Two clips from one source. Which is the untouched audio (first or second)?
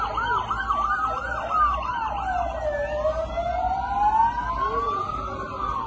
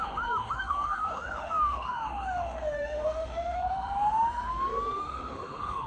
first